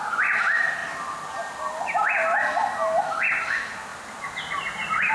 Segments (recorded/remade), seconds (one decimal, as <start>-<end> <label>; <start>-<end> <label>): 0.0-5.1 recorded

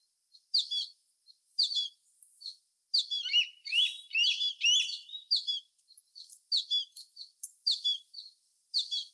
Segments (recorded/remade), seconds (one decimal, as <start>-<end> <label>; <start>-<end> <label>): 0.0-9.1 recorded

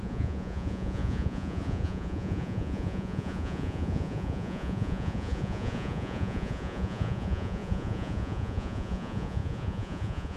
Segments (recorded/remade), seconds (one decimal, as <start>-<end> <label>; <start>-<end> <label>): 0.0-10.4 remade

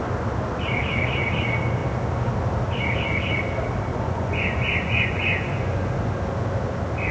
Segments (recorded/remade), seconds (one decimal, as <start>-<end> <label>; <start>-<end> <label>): 0.0-3.9 recorded; 3.9-6.1 remade; 6.1-7.1 recorded

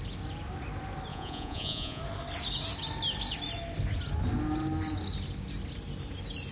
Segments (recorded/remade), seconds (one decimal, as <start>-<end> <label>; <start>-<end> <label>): 0.0-1.1 recorded; 1.1-2.0 remade; 2.0-6.5 recorded